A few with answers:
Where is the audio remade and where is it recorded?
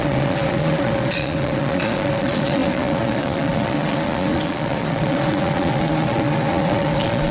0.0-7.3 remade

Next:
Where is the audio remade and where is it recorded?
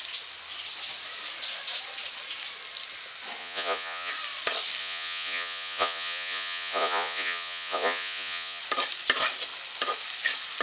0.0-3.4 recorded; 3.4-4.1 remade; 4.1-4.8 recorded; 4.8-8.6 remade; 8.6-10.6 recorded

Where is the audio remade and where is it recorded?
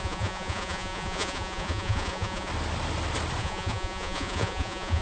0.0-2.5 remade; 2.5-3.4 recorded; 3.4-5.0 remade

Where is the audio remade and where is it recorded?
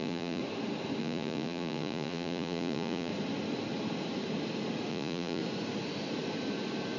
0.0-0.4 remade; 0.4-1.0 recorded; 1.0-3.1 remade; 3.1-4.9 recorded; 4.9-5.4 remade; 5.4-7.0 recorded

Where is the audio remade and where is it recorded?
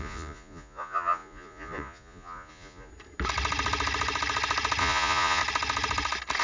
0.0-2.9 remade; 2.9-4.8 recorded; 4.8-5.4 remade; 5.4-6.4 recorded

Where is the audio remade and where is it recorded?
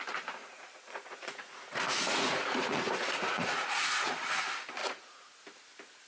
0.0-0.4 recorded; 0.4-4.1 remade; 4.1-4.8 recorded; 4.8-5.3 remade; 5.3-6.1 recorded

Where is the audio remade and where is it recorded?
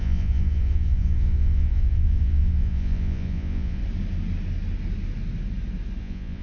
0.0-3.8 remade; 3.8-6.0 recorded; 6.0-6.4 remade